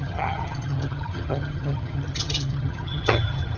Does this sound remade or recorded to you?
remade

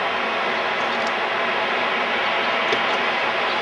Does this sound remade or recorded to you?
recorded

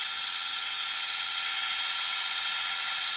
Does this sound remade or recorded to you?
remade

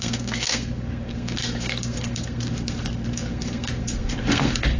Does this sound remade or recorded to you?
remade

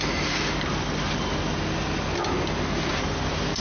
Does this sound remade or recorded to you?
recorded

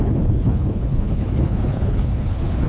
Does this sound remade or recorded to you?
remade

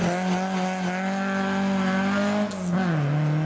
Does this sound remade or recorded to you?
recorded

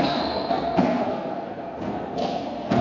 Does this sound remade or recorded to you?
remade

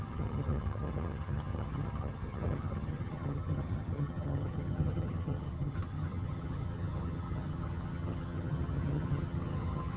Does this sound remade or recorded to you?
remade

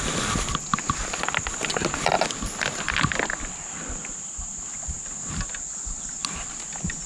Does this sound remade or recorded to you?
recorded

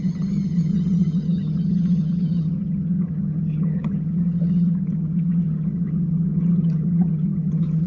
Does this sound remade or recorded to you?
remade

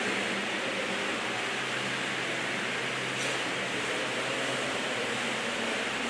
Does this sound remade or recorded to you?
recorded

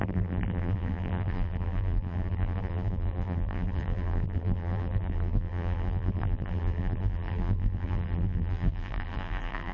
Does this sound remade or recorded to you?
remade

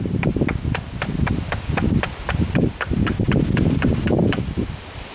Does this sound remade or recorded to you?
remade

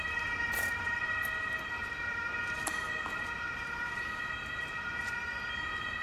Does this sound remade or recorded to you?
recorded